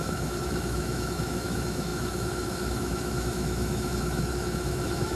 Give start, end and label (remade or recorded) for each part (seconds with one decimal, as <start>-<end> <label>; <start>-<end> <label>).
0.0-5.2 remade